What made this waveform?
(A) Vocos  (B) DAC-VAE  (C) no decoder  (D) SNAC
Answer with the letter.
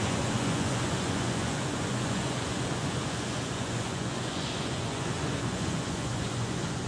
A